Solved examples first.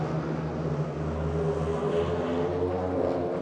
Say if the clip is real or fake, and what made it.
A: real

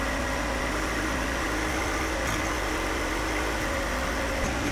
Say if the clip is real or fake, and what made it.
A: real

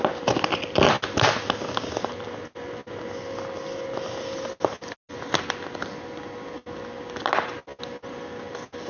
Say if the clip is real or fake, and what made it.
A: real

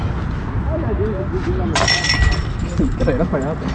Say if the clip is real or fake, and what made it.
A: real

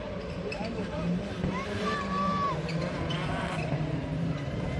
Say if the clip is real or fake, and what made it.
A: fake, vocoder, BigVGAN v2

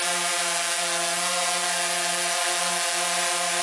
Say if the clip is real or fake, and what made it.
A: real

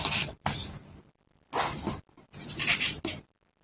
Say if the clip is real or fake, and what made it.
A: real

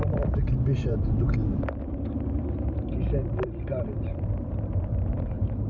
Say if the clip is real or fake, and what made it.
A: fake, vocoder, BigVGAN v2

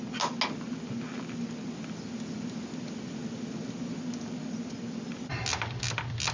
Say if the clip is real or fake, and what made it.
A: real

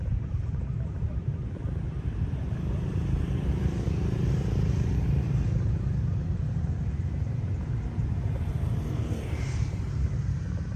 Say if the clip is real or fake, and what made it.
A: fake, vocoder, BigVGAN v2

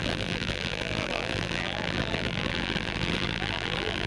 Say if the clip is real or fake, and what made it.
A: fake, vocoder, BigVGAN v2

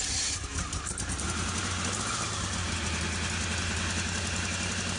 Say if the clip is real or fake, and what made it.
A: real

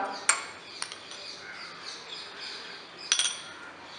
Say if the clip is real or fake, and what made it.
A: real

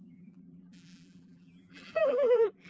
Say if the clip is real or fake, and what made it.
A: fake, vocoder, BigVGAN v2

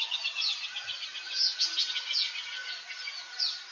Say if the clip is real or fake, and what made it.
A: real